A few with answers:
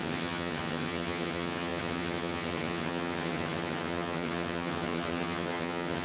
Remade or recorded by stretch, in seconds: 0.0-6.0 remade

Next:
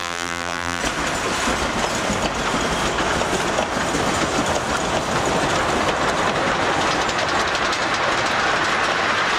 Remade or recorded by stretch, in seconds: 0.0-0.8 remade; 0.8-9.4 recorded

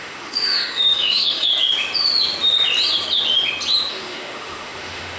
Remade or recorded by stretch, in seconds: 0.0-1.5 remade; 1.5-3.9 recorded; 3.9-5.2 remade

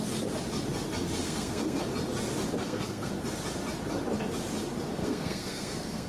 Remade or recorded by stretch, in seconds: 0.0-1.2 recorded; 1.2-1.8 remade; 1.8-2.6 recorded; 2.6-3.1 remade; 3.1-5.0 recorded; 5.0-6.1 remade